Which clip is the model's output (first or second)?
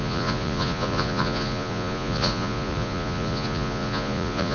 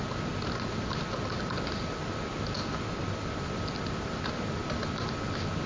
first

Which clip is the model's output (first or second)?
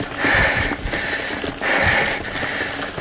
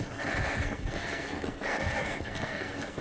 second